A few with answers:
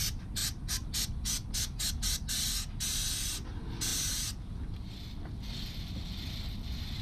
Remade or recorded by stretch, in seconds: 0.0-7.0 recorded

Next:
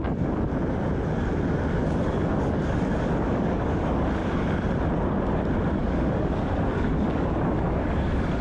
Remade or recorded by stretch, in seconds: 0.0-0.5 remade; 0.5-1.2 recorded; 1.2-4.2 remade; 4.2-5.8 recorded; 5.8-8.4 remade

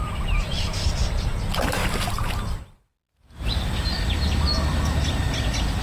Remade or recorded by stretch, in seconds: 0.0-1.8 recorded; 1.8-2.3 remade; 2.3-5.8 recorded

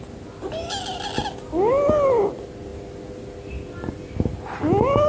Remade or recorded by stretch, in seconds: 0.0-5.1 recorded

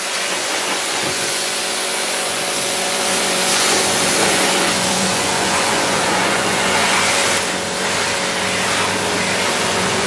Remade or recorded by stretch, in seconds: 0.0-7.2 remade; 7.2-9.6 recorded; 9.6-10.1 remade

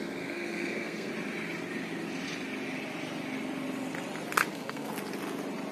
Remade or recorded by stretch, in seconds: 0.0-1.1 remade; 1.1-4.5 recorded; 4.5-4.9 remade; 4.9-5.7 recorded

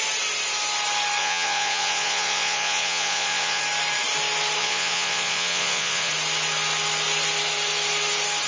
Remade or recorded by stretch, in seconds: 0.0-1.2 recorded; 1.2-3.6 remade; 3.6-4.6 recorded; 4.6-6.1 remade; 6.1-8.5 recorded

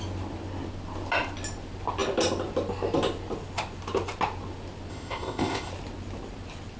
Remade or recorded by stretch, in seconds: 0.0-4.9 recorded; 4.9-5.7 remade; 5.7-6.8 recorded